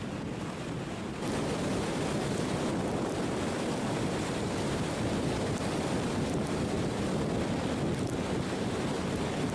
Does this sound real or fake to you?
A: real